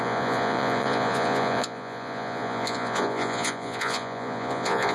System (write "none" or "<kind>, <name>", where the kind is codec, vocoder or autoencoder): vocoder, Vocos